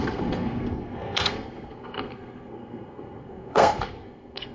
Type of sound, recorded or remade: remade